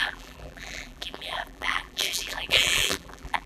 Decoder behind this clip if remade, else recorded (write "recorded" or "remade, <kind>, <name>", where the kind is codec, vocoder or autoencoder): remade, vocoder, BigVGAN v2